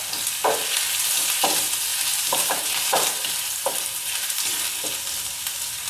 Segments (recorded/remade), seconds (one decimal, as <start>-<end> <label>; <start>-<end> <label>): 0.0-1.9 recorded; 1.9-4.4 remade; 4.4-5.9 recorded